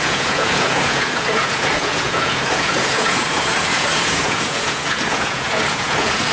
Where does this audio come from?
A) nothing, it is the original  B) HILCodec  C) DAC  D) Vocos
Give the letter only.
D